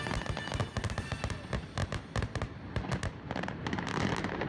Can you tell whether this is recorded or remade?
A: recorded